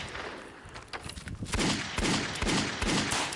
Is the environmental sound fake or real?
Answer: real